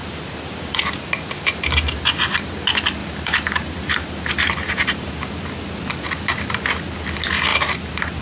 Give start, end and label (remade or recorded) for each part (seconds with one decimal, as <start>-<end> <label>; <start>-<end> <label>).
0.0-1.1 remade; 1.1-3.0 recorded; 3.0-5.3 remade; 5.3-7.5 recorded; 7.5-8.2 remade